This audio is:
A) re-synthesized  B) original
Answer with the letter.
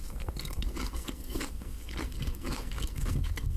A